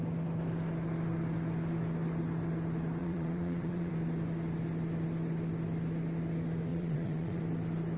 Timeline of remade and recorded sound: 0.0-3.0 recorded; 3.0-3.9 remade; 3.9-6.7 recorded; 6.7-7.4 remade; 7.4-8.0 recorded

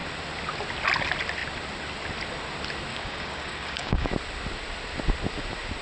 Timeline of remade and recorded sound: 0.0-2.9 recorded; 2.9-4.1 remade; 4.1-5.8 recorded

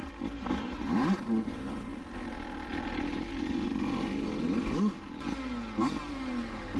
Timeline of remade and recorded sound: 0.0-0.5 recorded; 0.5-1.9 remade; 1.9-6.0 recorded; 6.0-6.8 remade